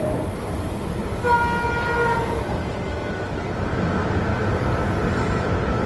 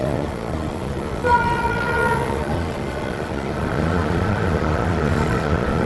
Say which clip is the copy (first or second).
second